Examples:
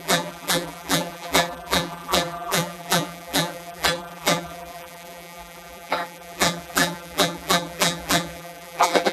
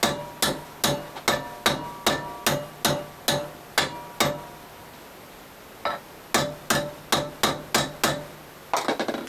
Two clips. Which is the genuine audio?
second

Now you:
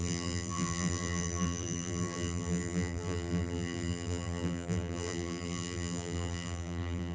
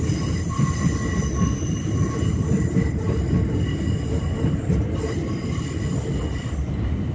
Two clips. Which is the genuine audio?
second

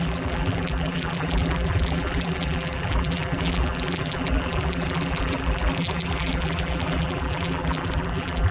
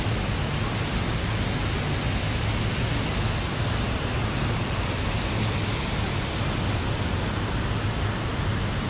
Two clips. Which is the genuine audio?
second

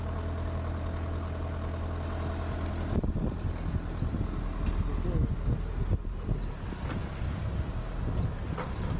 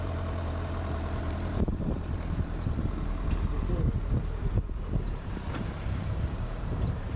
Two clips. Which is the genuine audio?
first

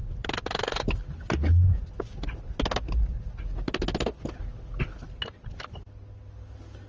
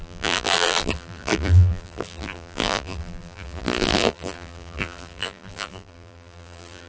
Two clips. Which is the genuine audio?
first